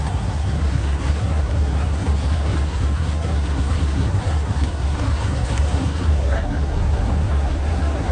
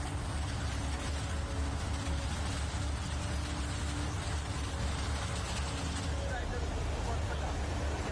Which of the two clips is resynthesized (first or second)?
first